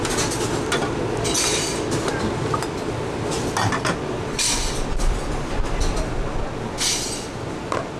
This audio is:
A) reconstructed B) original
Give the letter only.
B